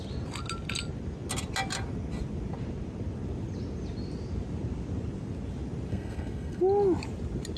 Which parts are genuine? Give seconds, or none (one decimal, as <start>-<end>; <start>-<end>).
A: 0.0-5.9; 6.6-7.6